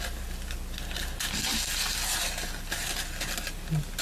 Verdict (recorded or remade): recorded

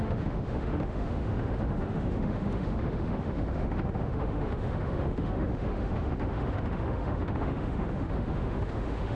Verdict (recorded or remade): remade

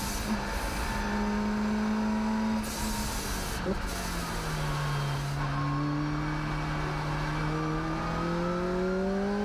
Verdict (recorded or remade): recorded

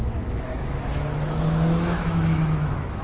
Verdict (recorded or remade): remade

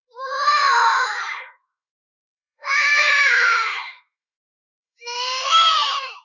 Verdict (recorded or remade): remade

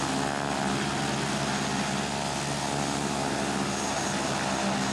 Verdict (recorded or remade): recorded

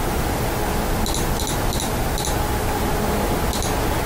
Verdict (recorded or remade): recorded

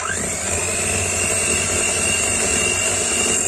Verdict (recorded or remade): recorded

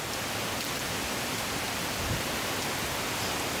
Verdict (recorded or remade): recorded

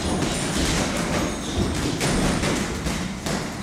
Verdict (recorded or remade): recorded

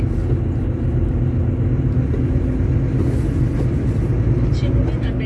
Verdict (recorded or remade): recorded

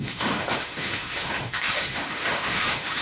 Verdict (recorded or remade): remade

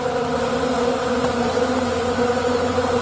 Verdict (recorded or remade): recorded